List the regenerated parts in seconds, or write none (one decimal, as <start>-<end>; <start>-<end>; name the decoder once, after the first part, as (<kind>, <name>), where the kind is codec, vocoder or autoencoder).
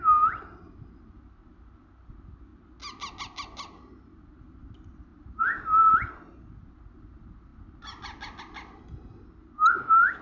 5.1-6.3 (vocoder, BigVGAN v2)